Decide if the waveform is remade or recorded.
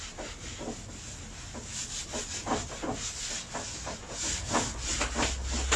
recorded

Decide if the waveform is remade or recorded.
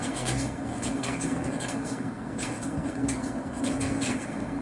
remade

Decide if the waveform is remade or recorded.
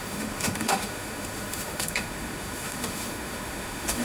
remade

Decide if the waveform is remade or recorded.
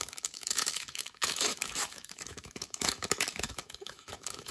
remade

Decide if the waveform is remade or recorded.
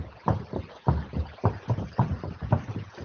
recorded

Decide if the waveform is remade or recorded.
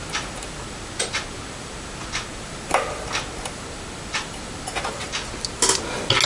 recorded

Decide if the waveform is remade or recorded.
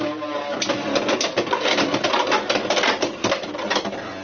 recorded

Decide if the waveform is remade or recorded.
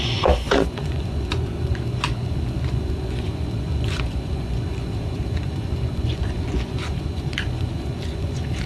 remade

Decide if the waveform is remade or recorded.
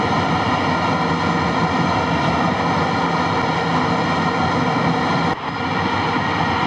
recorded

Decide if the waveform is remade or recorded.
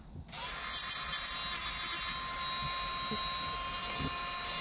recorded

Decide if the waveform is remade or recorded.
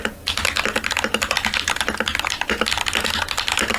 recorded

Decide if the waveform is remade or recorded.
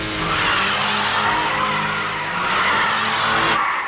recorded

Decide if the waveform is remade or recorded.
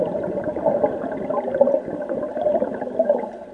remade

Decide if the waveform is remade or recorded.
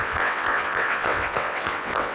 remade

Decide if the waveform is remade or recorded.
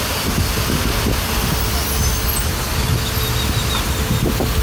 recorded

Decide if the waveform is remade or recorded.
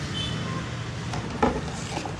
recorded